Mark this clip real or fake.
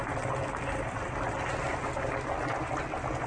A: real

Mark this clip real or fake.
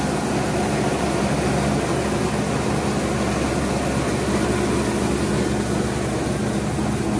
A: real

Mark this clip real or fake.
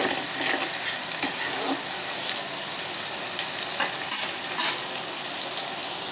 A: real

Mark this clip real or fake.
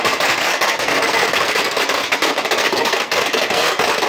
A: fake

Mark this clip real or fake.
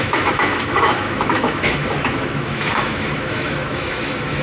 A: fake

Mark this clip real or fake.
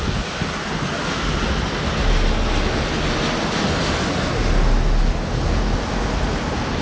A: real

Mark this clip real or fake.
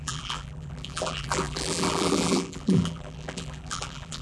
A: fake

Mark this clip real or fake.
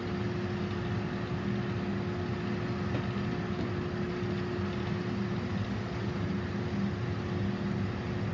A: real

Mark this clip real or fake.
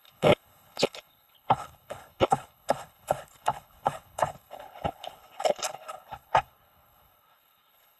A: fake